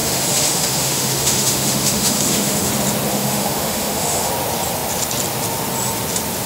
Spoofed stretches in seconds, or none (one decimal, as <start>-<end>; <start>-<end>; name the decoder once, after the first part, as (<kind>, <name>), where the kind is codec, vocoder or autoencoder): 0.0-2.7 (autoencoder, DAC-VAE); 3.1-4.3